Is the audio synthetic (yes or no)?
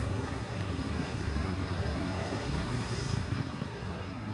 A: yes